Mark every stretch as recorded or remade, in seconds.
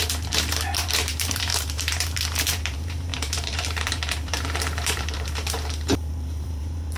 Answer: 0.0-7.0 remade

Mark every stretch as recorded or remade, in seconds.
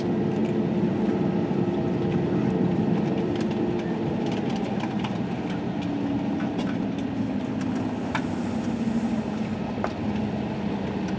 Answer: 0.0-0.4 recorded; 0.4-4.0 remade; 4.0-11.2 recorded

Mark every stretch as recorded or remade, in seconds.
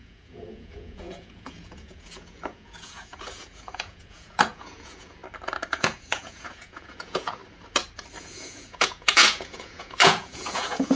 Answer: 0.0-5.2 remade; 5.2-5.7 recorded; 5.7-7.4 remade; 7.4-8.2 recorded; 8.2-11.0 remade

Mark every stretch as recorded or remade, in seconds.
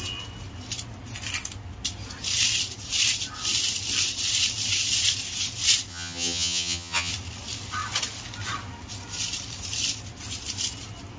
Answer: 0.0-5.9 recorded; 5.9-7.1 remade; 7.1-11.2 recorded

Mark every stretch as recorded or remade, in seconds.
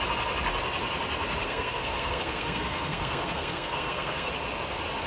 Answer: 0.0-1.4 recorded; 1.4-4.3 remade; 4.3-5.1 recorded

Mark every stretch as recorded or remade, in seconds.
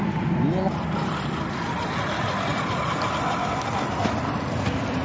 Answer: 0.0-5.0 recorded